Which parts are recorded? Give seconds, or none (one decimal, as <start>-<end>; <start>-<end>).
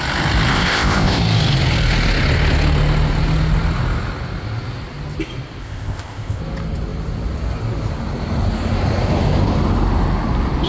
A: 0.0-0.5; 1.2-5.6; 6.4-10.7